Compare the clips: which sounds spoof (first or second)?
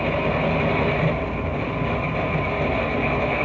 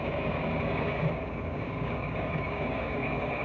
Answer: second